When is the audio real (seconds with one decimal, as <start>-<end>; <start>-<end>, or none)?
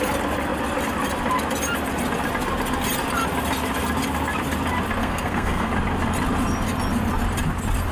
0.0-5.0; 5.7-7.9